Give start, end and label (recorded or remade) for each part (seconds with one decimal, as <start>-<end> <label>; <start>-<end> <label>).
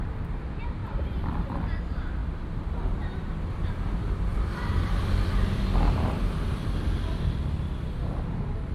0.0-0.8 recorded; 0.8-1.8 remade; 1.8-4.3 recorded; 4.3-5.6 remade; 5.6-8.7 recorded